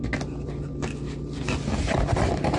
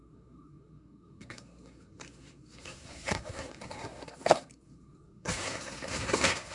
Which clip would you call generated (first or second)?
second